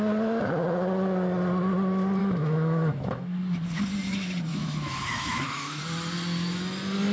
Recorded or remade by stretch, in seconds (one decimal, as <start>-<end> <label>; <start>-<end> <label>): 0.0-2.2 recorded; 2.2-3.4 remade; 3.4-4.5 recorded; 4.5-5.8 remade; 5.8-7.1 recorded